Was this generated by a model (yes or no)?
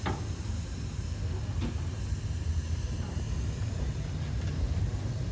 no